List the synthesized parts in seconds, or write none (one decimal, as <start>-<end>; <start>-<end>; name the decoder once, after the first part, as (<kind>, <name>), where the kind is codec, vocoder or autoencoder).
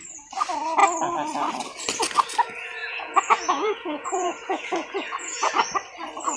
2.8-5.5 (vocoder, Vocos)